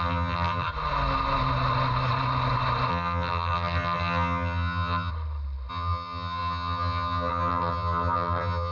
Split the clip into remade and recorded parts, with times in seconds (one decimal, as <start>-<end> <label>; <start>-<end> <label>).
0.0-0.7 remade; 0.7-2.9 recorded; 2.9-5.1 remade; 5.1-5.7 recorded; 5.7-8.7 remade